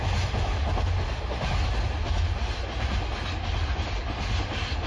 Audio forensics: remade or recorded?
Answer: recorded